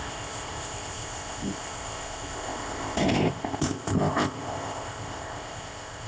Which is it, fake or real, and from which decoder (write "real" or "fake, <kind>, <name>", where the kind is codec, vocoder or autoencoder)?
fake, codec, ZipCodec